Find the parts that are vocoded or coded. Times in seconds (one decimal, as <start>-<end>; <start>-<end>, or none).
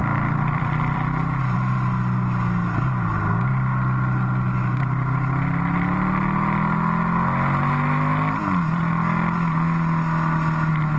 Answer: 0.0-1.4